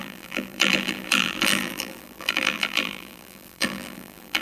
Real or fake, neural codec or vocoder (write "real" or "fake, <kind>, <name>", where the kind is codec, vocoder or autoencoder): fake, vocoder, BigVGAN v2